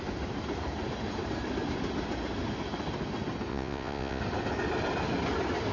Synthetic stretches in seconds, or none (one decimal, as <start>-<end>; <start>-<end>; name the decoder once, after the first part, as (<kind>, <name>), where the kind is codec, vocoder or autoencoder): 3.5-4.2 (vocoder, Vocos)